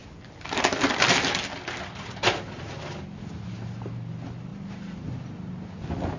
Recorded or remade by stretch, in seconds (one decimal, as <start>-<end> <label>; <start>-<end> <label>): 0.0-6.2 recorded